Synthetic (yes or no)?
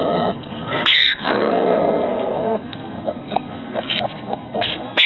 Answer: yes